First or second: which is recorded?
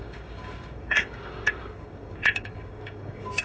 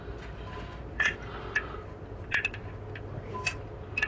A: second